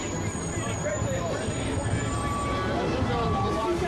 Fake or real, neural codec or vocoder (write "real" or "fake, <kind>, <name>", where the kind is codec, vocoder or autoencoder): real